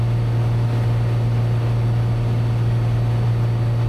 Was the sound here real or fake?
real